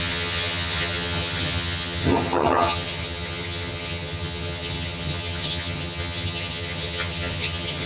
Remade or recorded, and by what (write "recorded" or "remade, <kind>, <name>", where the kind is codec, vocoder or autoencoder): remade, vocoder, HiFi-GAN